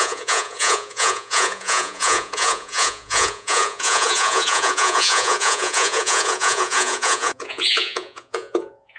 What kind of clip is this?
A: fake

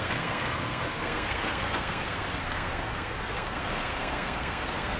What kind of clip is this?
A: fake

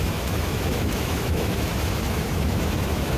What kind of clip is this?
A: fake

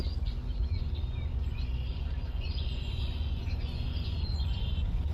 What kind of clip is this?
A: fake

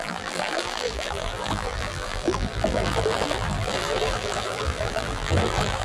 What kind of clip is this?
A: fake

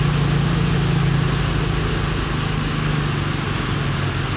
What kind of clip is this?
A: real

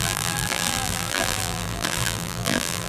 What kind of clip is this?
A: fake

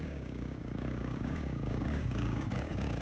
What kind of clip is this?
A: fake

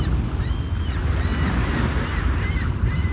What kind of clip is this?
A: real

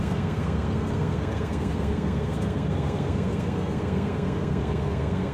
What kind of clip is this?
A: fake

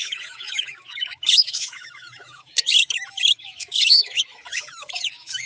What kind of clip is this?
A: fake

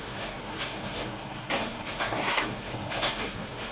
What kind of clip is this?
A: fake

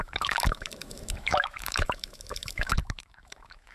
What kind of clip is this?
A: fake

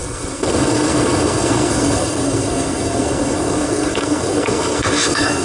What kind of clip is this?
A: fake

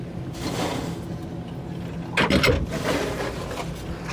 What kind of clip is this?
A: real